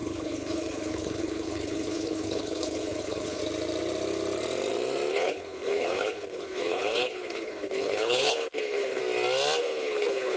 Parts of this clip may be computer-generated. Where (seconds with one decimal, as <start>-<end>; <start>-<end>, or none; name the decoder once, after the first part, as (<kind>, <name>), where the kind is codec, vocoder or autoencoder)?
0.0-3.4 (codec, HILCodec); 5.1-9.0; 9.6-10.4